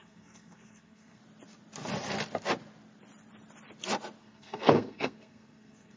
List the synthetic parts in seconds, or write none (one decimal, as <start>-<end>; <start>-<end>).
0.0-1.2; 4.2-6.0